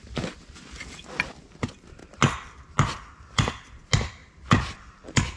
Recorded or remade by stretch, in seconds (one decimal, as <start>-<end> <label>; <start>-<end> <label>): 0.0-5.4 recorded